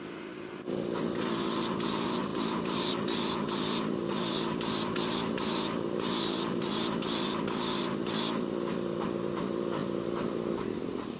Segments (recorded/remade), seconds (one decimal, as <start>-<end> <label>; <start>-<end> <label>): 0.0-2.3 recorded; 2.3-2.9 remade; 2.9-11.2 recorded